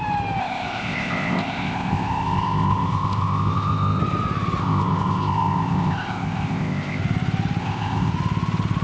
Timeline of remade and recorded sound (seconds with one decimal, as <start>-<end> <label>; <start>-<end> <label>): 0.0-0.4 recorded; 0.4-4.0 remade; 4.0-4.6 recorded; 4.6-7.0 remade; 7.0-7.6 recorded; 7.6-8.1 remade; 8.1-8.8 recorded